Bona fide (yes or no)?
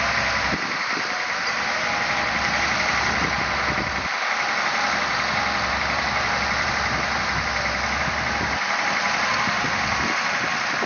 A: yes